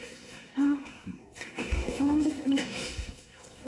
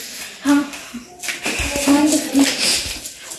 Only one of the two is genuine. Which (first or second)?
second